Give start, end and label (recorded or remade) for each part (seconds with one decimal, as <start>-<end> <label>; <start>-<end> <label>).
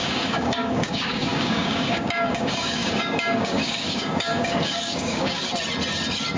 0.0-5.4 remade; 5.4-6.4 recorded